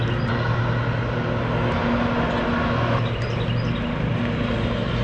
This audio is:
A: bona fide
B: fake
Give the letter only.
A